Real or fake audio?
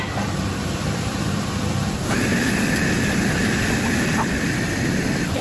fake